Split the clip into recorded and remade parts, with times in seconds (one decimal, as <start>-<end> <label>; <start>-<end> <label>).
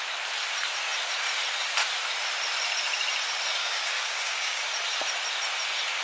0.0-3.6 recorded; 3.6-4.6 remade; 4.6-6.0 recorded